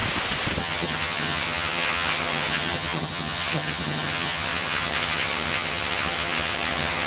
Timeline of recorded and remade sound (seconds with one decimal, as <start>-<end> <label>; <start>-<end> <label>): 0.0-0.6 recorded; 0.6-7.1 remade